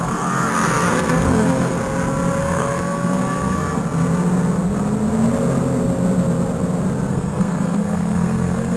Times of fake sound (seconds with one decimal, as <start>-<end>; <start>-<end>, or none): 0.0-1.8; 2.4-3.8; 7.1-8.8